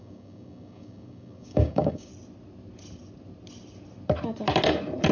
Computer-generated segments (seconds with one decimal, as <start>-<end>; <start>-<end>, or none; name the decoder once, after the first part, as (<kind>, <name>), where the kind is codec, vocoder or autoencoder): 0.0-2.1 (codec, DAC)